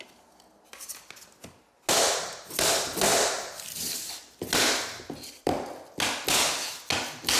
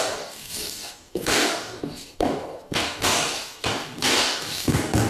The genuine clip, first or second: first